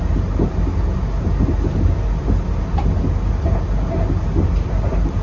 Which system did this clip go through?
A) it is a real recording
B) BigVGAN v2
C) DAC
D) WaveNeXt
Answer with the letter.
A